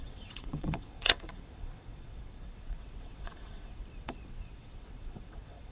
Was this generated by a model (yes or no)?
yes